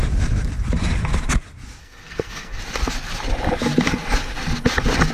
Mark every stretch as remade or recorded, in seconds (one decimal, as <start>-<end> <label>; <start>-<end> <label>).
0.0-1.8 recorded; 1.8-2.6 remade; 2.6-5.1 recorded